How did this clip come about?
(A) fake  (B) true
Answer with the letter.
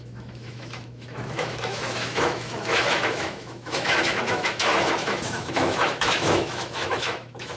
A